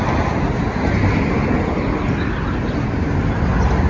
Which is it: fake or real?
real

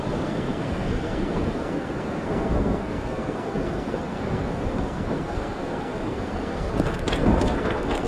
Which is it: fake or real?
fake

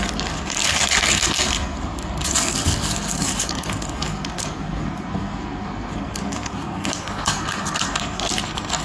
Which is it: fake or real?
fake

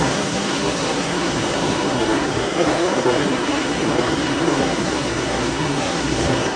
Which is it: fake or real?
fake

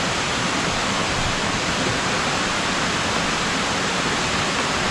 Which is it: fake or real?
real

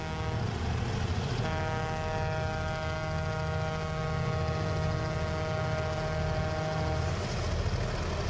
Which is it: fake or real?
real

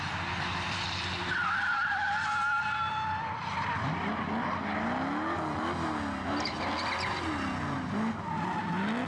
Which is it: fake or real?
real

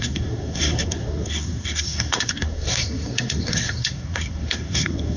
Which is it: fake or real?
fake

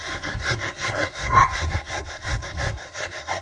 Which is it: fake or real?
fake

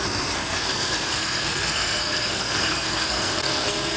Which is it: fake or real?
fake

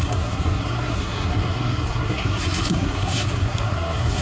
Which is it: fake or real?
fake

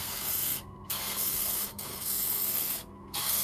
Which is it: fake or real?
fake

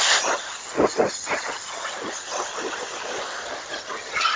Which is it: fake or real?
real